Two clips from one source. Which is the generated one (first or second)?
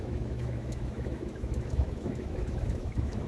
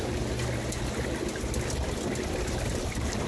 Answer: first